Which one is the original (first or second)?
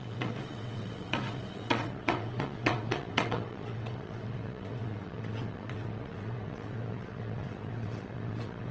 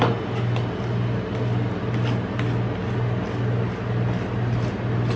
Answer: second